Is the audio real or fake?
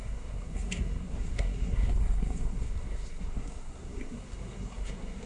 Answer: fake